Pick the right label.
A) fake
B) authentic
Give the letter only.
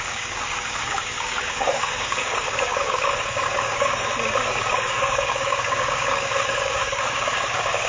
A